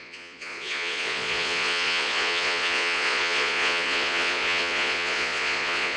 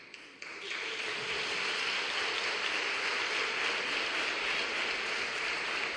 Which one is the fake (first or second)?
first